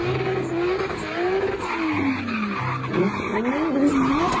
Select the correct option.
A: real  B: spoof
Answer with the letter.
A